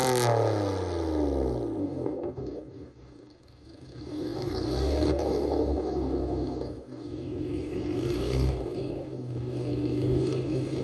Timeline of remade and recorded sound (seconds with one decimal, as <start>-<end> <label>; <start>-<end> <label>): 0.0-1.8 recorded; 1.8-10.8 remade